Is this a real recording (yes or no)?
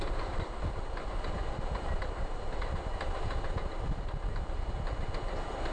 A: yes